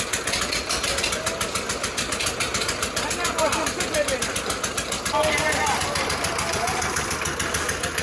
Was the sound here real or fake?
real